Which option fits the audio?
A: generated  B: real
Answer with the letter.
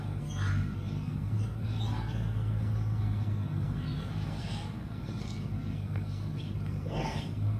A